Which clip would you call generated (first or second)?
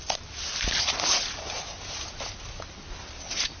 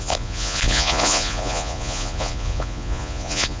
second